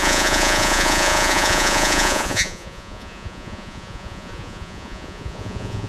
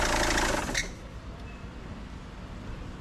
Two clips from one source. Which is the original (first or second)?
second